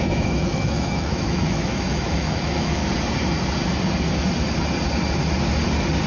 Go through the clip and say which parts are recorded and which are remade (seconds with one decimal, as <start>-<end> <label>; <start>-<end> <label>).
0.0-2.8 remade; 2.8-6.1 recorded